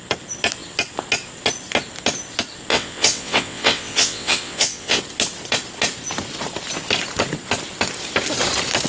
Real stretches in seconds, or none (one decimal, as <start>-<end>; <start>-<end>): 0.0-2.7; 5.0-8.9